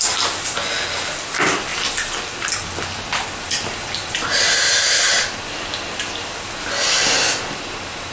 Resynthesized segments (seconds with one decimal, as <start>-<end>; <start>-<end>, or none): none